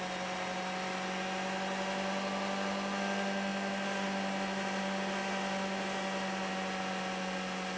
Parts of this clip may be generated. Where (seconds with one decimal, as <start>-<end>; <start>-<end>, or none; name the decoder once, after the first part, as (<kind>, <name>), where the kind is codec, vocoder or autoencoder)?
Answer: none